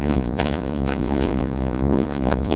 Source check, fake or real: fake